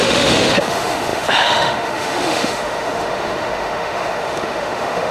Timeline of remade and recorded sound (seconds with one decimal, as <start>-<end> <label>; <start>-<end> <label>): 0.0-5.1 remade